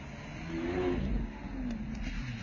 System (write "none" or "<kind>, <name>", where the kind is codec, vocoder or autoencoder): none